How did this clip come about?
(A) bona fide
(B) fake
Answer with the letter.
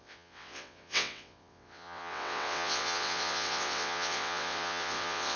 B